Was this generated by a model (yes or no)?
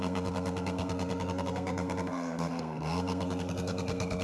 yes